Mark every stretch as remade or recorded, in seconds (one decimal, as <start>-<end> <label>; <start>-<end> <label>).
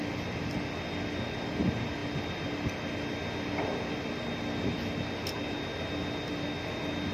0.0-7.1 recorded